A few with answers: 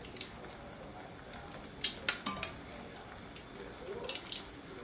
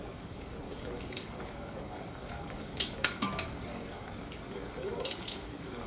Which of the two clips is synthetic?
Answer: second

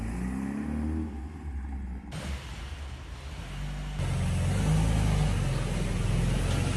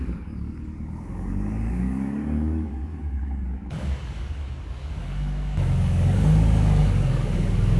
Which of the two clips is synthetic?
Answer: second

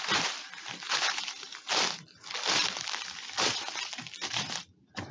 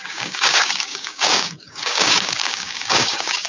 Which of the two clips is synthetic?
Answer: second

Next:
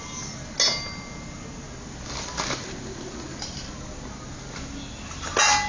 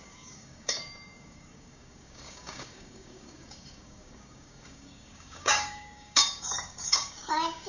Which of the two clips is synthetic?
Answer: second